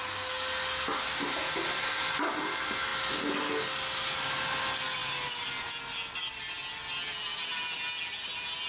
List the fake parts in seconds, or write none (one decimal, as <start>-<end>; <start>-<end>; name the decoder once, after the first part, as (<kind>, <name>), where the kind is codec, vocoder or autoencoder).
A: none